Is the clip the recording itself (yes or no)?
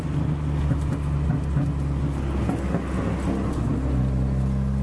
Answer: yes